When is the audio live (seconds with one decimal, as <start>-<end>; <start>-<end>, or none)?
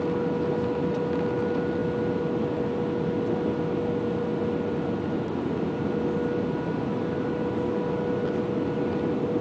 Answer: 0.0-9.4